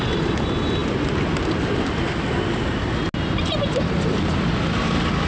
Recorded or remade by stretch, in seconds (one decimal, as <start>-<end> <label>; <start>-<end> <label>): 0.0-5.3 recorded